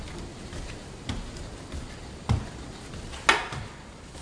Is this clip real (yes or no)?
yes